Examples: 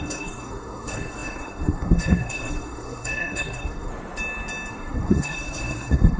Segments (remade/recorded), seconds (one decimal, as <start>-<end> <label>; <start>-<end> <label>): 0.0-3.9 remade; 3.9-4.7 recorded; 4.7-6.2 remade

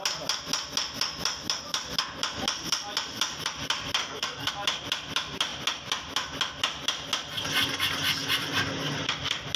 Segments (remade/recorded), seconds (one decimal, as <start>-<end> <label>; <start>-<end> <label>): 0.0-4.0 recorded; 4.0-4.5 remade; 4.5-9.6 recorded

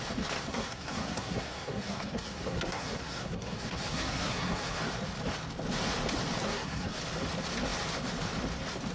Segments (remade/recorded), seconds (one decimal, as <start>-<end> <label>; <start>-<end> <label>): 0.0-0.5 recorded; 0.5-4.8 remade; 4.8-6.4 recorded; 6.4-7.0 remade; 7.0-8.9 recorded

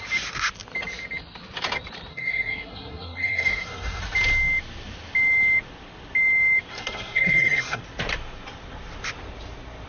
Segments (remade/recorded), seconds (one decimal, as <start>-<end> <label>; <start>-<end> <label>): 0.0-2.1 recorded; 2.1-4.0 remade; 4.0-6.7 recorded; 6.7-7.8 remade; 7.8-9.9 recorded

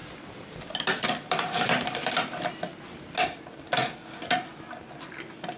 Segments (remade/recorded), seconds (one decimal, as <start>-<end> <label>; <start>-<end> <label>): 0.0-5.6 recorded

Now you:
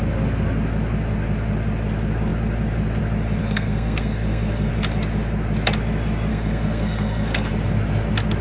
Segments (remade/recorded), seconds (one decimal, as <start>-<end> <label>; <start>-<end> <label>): 0.0-3.4 recorded; 3.4-4.7 remade; 4.7-6.3 recorded; 6.3-7.5 remade; 7.5-8.4 recorded

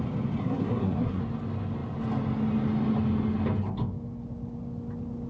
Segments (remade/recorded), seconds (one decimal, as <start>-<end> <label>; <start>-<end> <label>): 0.0-0.4 recorded; 0.4-1.2 remade; 1.2-5.3 recorded

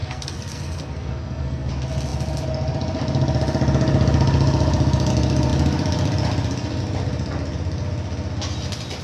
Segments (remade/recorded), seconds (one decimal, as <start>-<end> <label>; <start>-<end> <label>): 0.0-1.7 remade; 1.7-9.0 recorded